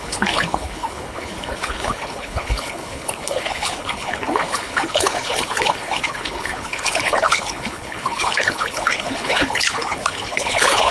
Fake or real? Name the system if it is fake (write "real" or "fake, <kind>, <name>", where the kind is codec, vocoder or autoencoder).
fake, codec, HILCodec